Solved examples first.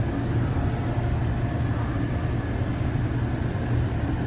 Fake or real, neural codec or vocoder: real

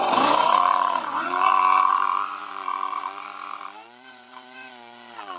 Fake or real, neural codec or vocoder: fake, vocoder, Vocos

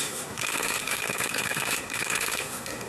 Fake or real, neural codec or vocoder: fake, codec, SNAC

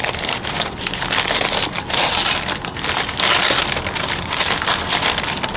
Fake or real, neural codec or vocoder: real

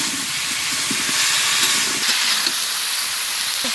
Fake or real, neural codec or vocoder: real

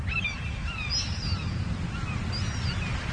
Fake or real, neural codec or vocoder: real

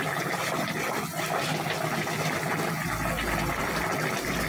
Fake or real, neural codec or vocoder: real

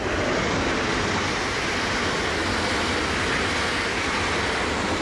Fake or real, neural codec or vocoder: real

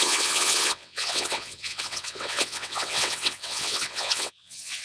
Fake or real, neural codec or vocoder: fake, vocoder, WaveNeXt